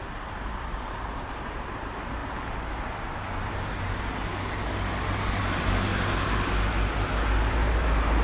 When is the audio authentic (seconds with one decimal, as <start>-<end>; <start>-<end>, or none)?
2.2-5.4; 5.9-7.5